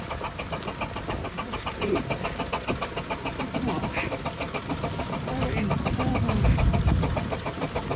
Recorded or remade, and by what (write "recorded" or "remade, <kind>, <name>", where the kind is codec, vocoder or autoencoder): recorded